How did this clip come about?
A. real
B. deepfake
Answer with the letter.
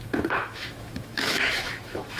B